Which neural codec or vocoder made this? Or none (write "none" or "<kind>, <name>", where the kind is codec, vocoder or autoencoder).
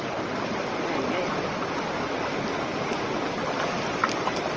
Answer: none